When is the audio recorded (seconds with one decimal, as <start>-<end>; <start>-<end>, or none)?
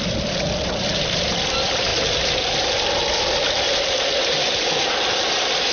1.9-5.3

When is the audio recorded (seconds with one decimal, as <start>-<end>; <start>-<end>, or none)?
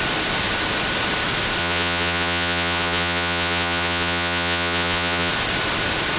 0.0-1.6; 5.3-6.2